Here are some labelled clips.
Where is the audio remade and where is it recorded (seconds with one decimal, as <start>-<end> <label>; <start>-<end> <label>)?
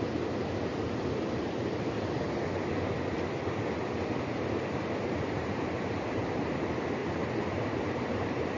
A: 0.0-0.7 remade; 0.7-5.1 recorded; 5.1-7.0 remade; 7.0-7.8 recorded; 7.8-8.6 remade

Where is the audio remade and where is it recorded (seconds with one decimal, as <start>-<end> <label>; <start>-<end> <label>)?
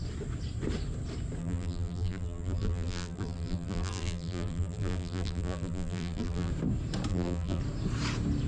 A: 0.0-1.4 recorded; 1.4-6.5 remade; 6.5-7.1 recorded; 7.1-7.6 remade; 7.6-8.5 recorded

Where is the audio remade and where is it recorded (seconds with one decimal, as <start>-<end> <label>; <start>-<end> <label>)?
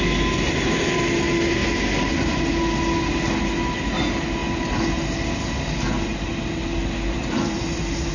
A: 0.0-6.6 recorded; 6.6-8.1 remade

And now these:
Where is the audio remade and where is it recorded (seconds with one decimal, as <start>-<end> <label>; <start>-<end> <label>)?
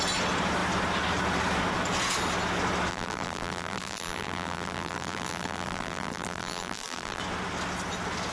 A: 0.0-2.9 recorded; 2.9-7.2 remade; 7.2-8.3 recorded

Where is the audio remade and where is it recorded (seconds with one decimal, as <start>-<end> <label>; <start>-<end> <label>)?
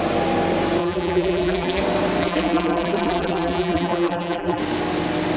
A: 0.0-0.8 recorded; 0.8-1.8 remade; 1.8-2.2 recorded; 2.2-4.6 remade; 4.6-5.4 recorded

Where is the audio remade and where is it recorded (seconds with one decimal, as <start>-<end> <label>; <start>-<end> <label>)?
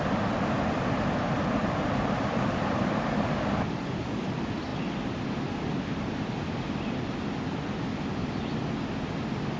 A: 0.0-1.6 recorded; 1.6-4.0 remade; 4.0-9.6 recorded